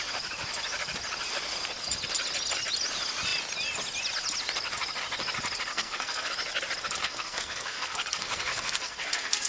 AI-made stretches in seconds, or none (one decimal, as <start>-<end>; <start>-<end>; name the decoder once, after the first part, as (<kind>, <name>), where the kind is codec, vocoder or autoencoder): 5.7-6.3 (codec, SNAC); 7.0-9.5